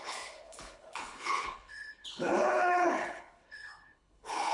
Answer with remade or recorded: remade